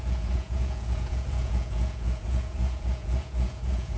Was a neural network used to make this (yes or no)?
yes